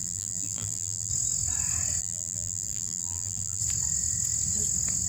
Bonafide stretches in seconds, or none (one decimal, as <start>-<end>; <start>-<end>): 1.1-2.0; 3.6-5.1